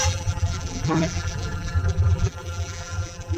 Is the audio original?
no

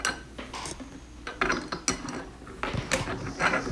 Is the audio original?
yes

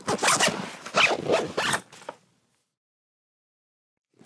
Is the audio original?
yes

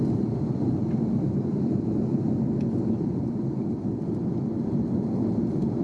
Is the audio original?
yes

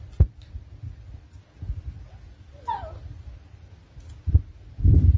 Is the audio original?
yes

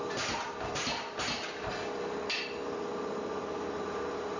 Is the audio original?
yes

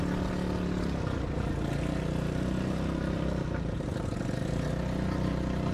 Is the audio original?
yes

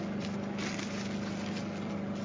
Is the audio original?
yes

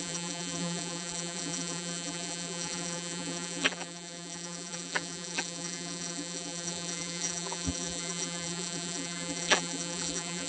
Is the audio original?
no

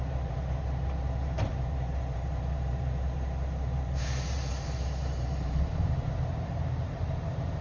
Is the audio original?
no